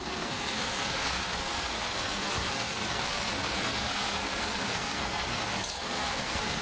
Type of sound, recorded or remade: remade